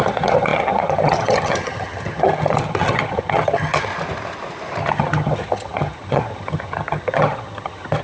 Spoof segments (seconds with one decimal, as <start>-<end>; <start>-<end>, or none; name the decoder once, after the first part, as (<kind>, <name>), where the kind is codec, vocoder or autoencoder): 0.0-3.9 (vocoder, HiFi-GAN); 4.8-8.0